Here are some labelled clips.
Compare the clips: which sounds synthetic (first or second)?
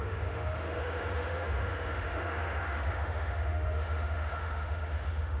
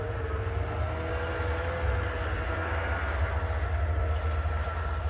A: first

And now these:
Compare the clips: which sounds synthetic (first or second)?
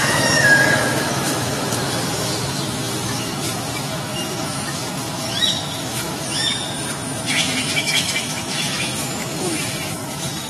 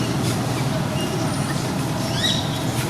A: first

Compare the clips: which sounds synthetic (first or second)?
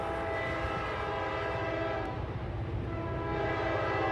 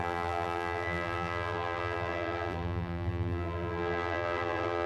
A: second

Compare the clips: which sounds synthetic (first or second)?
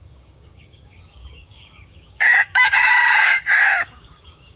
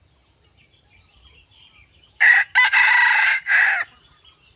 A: first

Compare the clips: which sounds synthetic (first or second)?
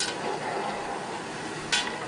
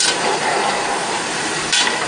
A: second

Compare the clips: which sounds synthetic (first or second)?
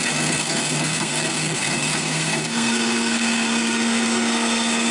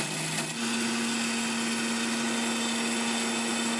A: first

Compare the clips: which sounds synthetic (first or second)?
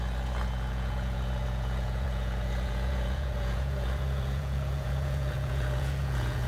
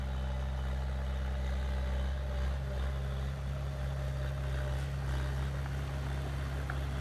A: first